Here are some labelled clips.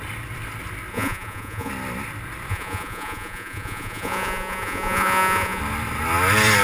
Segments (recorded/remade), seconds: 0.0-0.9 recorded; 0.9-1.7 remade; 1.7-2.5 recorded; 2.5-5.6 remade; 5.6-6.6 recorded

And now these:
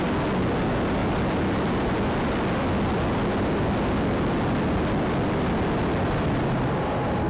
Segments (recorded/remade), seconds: 0.0-7.3 recorded

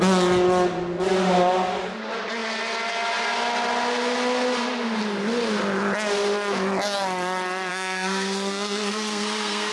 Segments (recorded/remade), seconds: 0.0-7.7 recorded; 7.7-9.7 remade

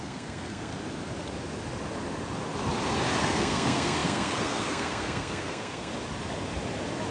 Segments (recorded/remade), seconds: 0.0-0.7 remade; 0.7-3.2 recorded; 3.2-5.9 remade; 5.9-7.1 recorded

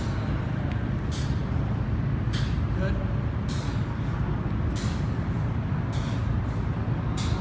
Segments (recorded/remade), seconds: 0.0-7.4 recorded